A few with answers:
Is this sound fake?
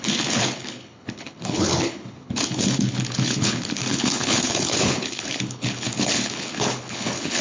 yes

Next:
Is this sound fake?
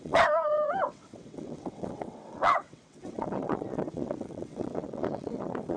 yes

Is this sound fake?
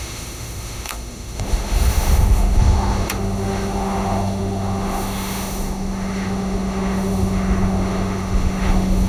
yes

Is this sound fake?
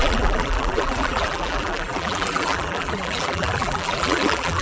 yes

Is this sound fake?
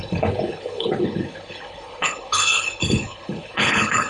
yes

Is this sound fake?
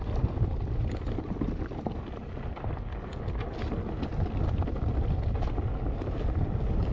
no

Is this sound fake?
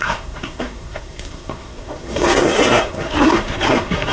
yes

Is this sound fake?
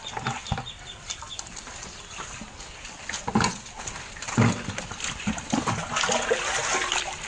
yes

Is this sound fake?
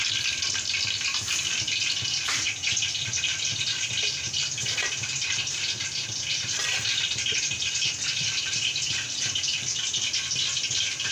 yes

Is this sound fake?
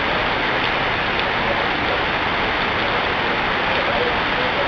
no